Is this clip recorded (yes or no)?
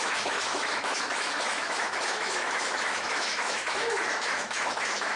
no